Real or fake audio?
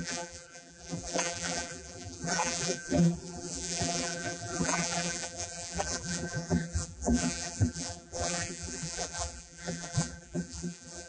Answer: fake